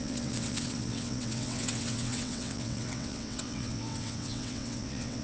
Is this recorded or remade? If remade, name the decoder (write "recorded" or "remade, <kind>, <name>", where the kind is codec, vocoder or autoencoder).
remade, vocoder, WaveNeXt